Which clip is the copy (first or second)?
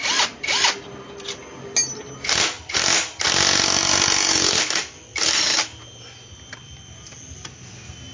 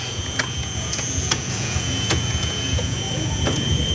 second